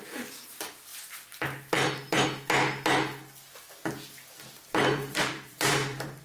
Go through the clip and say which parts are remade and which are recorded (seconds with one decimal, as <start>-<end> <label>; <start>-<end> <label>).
0.0-0.9 remade; 0.9-4.6 recorded; 4.6-6.2 remade